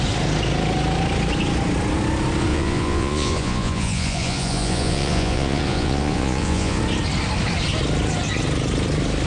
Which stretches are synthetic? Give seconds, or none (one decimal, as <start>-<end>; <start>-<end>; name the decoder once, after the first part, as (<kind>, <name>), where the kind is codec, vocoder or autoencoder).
2.5-6.8 (vocoder, Vocos)